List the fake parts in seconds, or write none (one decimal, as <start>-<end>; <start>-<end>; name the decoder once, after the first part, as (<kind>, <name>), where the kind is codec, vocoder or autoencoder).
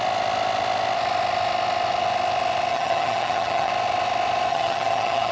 2.7-3.7 (vocoder, HiFi-GAN); 4.5-5.3